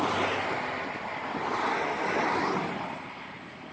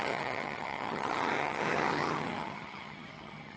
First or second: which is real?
first